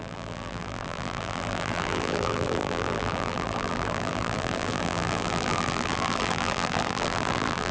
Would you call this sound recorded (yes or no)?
no